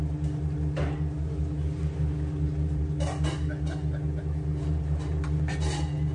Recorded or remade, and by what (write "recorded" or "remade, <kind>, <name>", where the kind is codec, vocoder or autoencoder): recorded